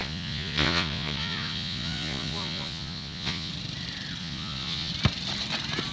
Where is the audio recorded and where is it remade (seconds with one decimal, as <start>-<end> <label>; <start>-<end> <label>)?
0.0-3.5 remade; 3.5-4.2 recorded; 4.2-4.9 remade; 4.9-5.9 recorded